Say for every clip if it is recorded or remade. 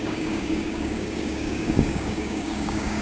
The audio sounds remade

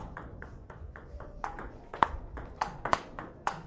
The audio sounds remade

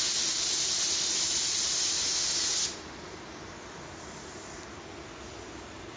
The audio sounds recorded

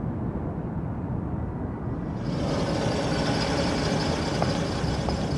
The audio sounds recorded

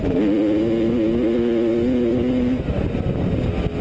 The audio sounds recorded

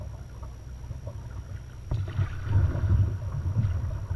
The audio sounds recorded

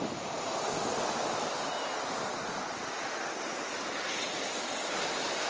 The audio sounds recorded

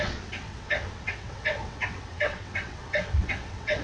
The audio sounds remade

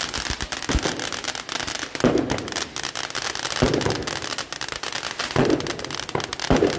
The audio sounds recorded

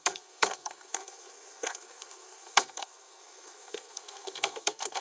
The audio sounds remade